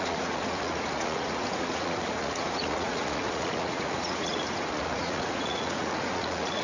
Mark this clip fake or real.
fake